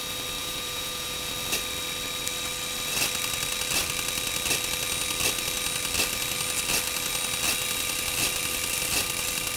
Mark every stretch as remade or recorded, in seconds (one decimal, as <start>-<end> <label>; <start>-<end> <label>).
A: 0.0-0.4 recorded; 0.4-1.3 remade; 1.3-9.6 recorded